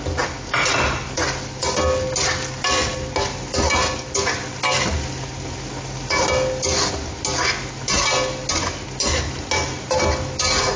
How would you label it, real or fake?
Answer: real